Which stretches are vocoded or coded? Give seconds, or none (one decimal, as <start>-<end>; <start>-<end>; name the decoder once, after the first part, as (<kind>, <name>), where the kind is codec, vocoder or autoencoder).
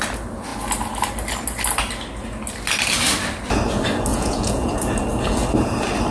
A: 4.1-4.7 (vocoder, Vocos)